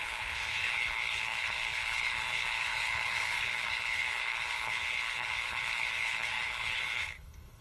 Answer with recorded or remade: remade